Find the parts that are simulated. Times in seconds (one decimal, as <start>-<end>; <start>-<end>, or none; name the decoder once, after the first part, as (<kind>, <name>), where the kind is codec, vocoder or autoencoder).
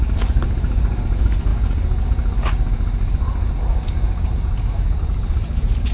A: 0.0-1.5 (vocoder, BigVGAN v2); 5.0-5.9